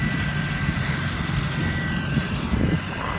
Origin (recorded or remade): recorded